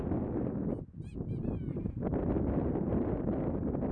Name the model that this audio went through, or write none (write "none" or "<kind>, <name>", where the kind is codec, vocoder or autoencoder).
none